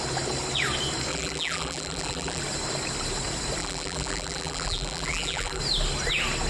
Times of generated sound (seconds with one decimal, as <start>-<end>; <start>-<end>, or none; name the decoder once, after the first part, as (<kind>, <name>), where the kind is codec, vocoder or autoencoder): 1.1-2.4 (vocoder, BigVGAN v2); 3.6-5.6